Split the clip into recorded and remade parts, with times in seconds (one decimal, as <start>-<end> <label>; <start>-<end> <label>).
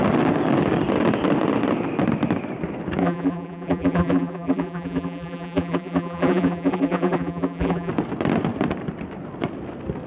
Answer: 0.0-3.0 recorded; 3.0-7.9 remade; 7.9-10.1 recorded